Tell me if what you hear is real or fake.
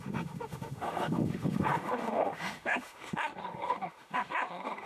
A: fake